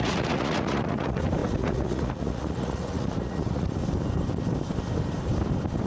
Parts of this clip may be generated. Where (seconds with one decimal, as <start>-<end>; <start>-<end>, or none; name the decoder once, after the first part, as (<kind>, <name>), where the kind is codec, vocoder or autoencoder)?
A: 0.0-3.8 (vocoder, Vocos)